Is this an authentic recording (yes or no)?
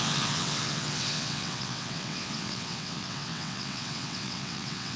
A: no